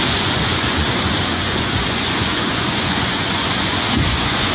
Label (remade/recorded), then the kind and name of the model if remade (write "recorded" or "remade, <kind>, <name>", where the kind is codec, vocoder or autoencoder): remade, vocoder, Vocos